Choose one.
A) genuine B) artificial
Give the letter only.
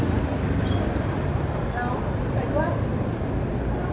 A